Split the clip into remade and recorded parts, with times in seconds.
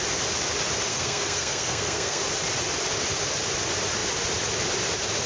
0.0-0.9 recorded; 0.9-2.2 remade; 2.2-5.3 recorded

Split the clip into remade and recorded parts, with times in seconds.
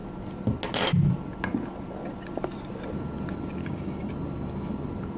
0.0-3.6 recorded; 3.6-4.1 remade; 4.1-5.2 recorded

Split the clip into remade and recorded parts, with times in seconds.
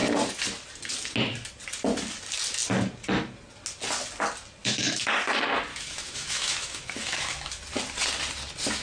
0.0-4.6 recorded; 4.6-5.1 remade; 5.1-5.7 recorded; 5.7-7.6 remade; 7.6-8.8 recorded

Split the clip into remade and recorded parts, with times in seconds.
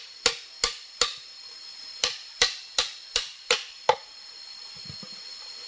0.0-1.1 recorded; 1.1-4.1 remade; 4.1-5.7 recorded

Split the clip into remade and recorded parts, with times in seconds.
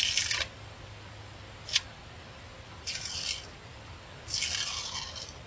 0.0-5.5 recorded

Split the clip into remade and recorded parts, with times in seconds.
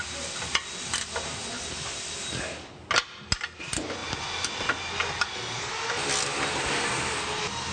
0.0-7.7 recorded